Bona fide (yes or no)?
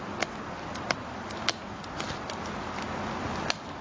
yes